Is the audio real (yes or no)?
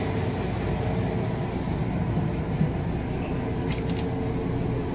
yes